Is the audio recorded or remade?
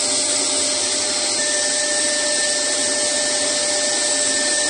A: recorded